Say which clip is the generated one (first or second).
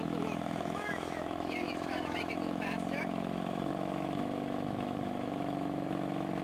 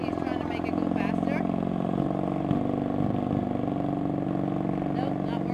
first